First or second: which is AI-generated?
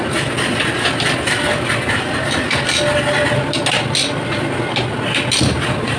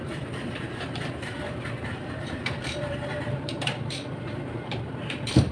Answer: second